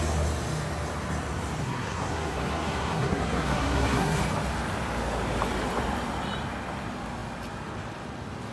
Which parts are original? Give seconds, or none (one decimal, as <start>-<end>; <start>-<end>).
0.0-1.6; 4.2-8.5